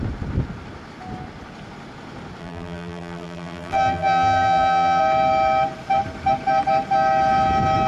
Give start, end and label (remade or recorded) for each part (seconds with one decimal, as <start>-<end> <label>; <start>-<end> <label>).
0.0-2.4 recorded; 2.4-5.0 remade; 5.0-7.9 recorded